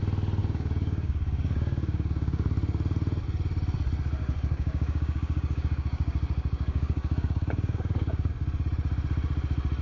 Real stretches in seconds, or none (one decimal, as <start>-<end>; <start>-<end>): 0.0-0.4; 2.5-4.2; 8.3-9.8